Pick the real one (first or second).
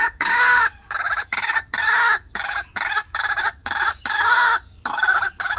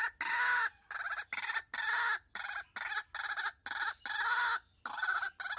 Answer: second